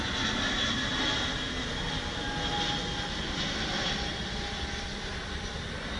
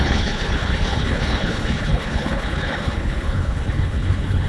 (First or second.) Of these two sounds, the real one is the first